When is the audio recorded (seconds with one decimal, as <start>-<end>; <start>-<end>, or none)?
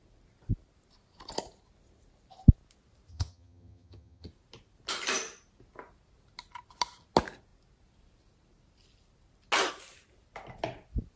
0.0-3.1; 4.3-11.2